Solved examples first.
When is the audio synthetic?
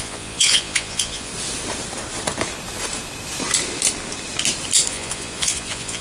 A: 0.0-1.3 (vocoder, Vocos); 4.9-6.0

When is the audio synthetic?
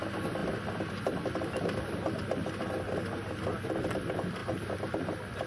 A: none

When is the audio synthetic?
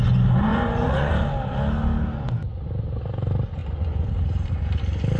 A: 0.5-1.1 (vocoder, Vocos); 3.6-4.1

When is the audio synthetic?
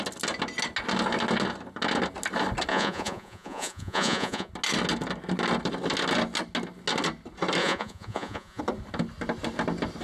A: 2.7-4.5 (vocoder, Vocos); 7.6-8.6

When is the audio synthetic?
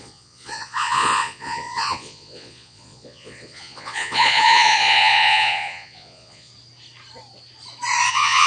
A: 0.0-6.5 (vocoder, Vocos); 8.1-8.5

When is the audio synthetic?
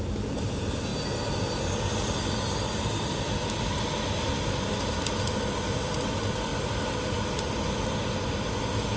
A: none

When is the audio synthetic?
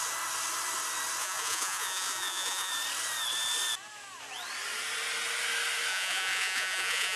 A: 1.2-2.7 (vocoder, Vocos); 5.9-7.2